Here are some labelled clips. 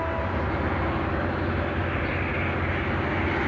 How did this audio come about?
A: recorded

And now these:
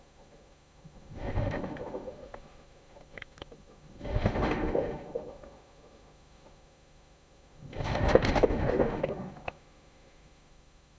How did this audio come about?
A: remade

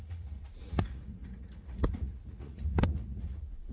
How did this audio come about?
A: remade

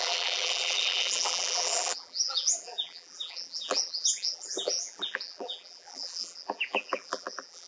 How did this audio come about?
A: remade